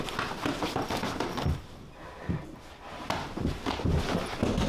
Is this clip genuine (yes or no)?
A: yes